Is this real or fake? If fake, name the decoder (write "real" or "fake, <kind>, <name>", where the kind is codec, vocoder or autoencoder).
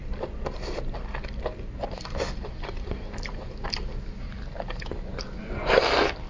real